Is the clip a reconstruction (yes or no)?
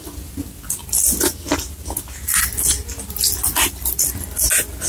no